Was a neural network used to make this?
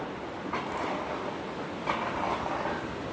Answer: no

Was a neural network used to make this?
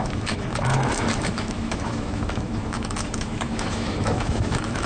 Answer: yes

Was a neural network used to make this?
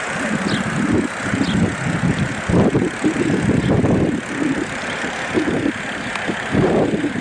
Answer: no